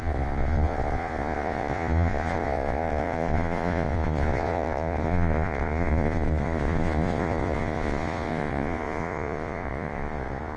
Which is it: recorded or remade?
remade